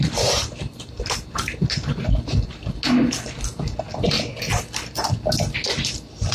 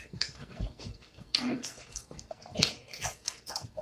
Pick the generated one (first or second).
second